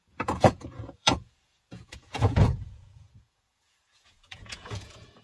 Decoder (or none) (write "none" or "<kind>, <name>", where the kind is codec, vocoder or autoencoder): vocoder, Vocos